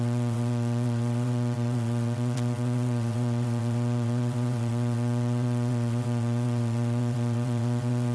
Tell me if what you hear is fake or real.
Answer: fake